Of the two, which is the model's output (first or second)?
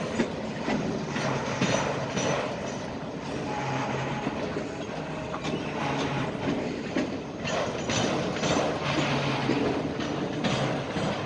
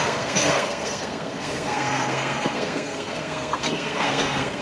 second